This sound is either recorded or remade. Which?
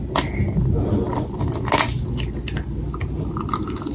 recorded